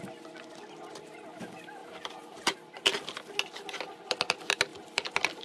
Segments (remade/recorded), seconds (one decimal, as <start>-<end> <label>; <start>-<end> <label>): 0.0-1.8 recorded; 1.8-3.0 remade; 3.0-4.7 recorded; 4.7-5.4 remade